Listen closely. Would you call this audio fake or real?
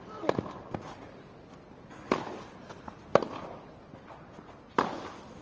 real